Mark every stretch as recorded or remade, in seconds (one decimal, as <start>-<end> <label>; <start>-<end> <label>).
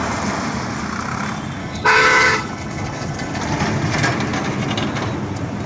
0.0-1.6 recorded; 1.6-3.4 remade; 3.4-5.7 recorded